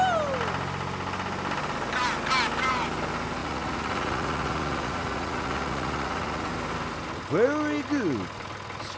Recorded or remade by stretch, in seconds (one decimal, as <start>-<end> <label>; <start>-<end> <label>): 0.0-3.4 recorded; 3.4-6.5 remade; 6.5-9.0 recorded